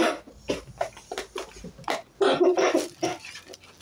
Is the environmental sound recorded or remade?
recorded